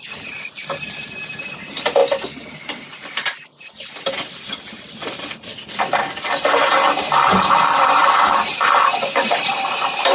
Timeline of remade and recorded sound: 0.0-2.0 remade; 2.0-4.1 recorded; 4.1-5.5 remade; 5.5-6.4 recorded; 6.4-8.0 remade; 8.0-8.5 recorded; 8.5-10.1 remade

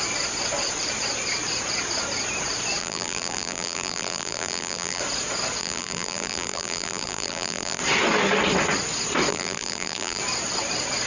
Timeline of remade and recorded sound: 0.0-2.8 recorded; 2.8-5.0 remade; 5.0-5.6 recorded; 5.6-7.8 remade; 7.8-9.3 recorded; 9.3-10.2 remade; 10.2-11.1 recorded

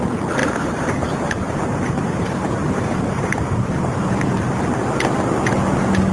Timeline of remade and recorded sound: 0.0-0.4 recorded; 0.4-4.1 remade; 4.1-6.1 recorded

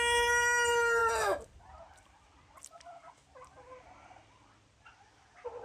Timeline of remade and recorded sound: 0.0-5.6 recorded

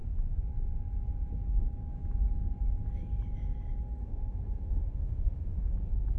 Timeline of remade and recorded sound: 0.0-4.0 recorded; 4.0-5.7 remade; 5.7-6.2 recorded

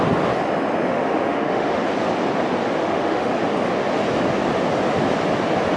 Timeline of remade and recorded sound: 0.0-0.9 recorded; 0.9-1.8 remade; 1.8-2.8 recorded; 2.8-3.3 remade; 3.3-5.8 recorded